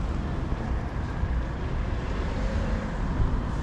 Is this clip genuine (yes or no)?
yes